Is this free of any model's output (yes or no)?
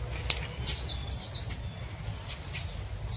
yes